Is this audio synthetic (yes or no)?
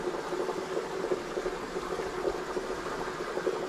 no